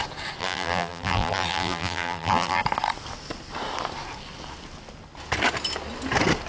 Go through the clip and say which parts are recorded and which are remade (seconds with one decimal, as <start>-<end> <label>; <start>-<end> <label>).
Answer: 0.0-0.4 recorded; 0.4-2.6 remade; 2.6-6.5 recorded